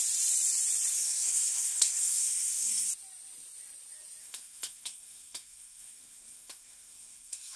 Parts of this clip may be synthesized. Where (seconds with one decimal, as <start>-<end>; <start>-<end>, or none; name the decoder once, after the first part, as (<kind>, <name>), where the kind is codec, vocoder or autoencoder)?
0.9-2.9 (codec, SNAC); 4.2-7.6